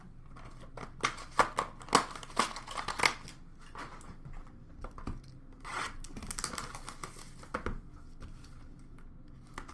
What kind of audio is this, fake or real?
real